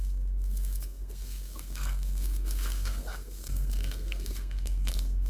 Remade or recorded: remade